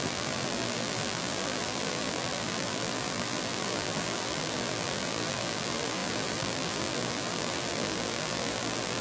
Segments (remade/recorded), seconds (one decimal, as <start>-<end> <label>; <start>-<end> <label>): 0.0-9.0 remade